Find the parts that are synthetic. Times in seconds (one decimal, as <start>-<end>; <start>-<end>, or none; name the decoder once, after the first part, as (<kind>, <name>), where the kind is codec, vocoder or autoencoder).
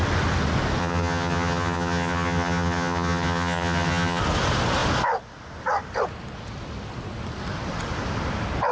0.8-4.2 (vocoder, HiFi-GAN)